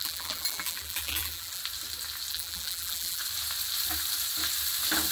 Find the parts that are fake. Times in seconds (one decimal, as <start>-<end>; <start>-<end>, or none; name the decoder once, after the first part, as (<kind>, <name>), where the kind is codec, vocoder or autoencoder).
0.0-1.6 (vocoder, BigVGAN v2); 2.3-3.2